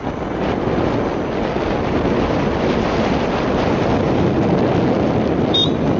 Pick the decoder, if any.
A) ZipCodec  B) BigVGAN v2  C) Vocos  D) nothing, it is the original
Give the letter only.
D